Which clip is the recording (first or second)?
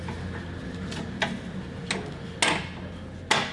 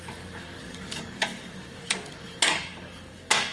first